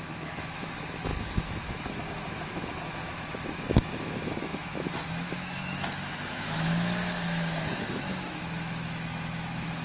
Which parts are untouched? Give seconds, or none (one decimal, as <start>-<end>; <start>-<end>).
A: none